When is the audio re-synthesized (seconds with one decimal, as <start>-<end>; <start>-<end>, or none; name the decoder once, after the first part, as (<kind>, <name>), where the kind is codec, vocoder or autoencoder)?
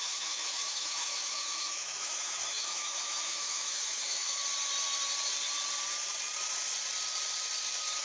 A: 0.0-4.4 (autoencoder, DAC-VAE)